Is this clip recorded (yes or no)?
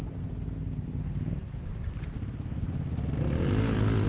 yes